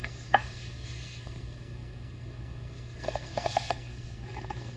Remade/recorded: remade